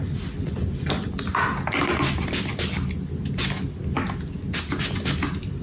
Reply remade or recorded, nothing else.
recorded